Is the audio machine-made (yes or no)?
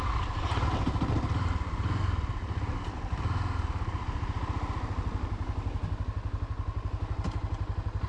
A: no